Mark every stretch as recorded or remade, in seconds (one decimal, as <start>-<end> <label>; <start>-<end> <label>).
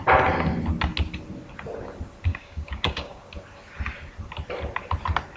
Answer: 0.0-2.3 recorded; 2.3-3.2 remade; 3.2-5.4 recorded